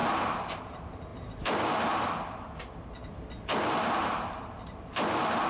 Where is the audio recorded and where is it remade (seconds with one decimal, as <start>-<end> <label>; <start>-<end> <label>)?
0.0-5.5 recorded